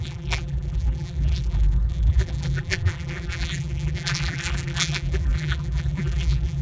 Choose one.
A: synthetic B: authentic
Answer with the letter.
A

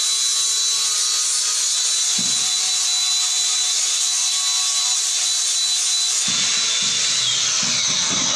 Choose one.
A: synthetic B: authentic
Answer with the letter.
B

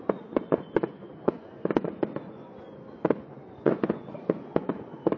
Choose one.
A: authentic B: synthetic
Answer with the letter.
B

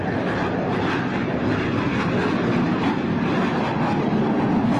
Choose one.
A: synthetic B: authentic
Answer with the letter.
B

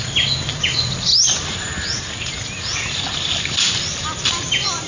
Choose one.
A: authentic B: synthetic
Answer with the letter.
A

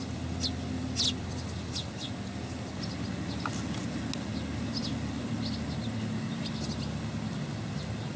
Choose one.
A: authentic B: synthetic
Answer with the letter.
A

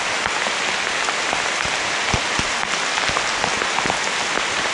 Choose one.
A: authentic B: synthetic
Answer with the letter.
A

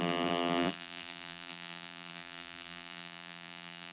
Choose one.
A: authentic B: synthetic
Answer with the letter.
B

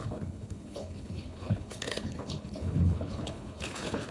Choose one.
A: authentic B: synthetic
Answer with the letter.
B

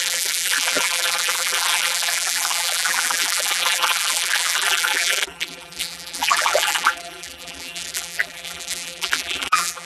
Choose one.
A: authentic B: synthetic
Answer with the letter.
B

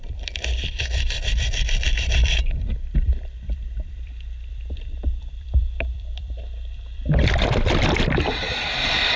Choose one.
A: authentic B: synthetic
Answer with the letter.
B